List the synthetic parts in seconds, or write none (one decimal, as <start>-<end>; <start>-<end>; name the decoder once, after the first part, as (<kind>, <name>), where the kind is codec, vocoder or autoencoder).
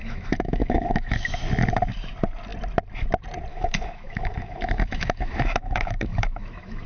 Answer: 0.0-1.4 (autoencoder, DAC-VAE); 3.5-6.9